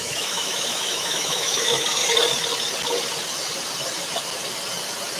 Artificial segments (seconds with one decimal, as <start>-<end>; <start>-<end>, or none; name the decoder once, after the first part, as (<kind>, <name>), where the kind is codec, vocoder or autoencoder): 0.0-2.0 (autoencoder, DAC-VAE)